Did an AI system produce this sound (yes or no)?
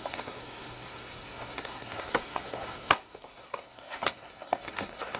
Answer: yes